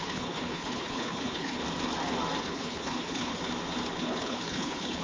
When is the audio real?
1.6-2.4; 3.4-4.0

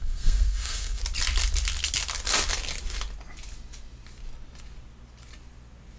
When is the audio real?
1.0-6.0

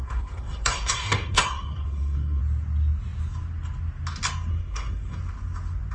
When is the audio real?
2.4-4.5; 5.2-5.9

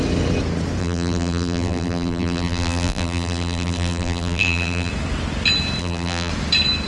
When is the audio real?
0.0-0.8; 4.9-5.8; 6.3-6.9